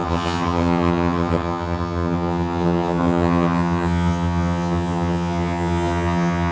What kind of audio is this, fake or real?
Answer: fake